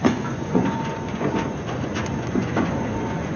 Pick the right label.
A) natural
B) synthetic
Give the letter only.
B